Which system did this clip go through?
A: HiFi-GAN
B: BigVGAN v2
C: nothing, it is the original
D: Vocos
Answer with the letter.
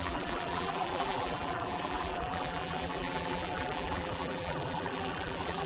B